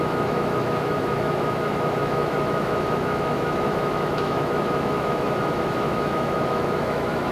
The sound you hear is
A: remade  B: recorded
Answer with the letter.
A